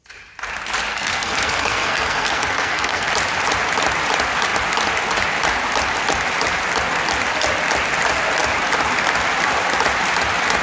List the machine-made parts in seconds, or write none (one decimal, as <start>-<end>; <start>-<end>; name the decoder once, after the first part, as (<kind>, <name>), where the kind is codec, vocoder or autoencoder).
0.9-3.1 (codec, SNAC)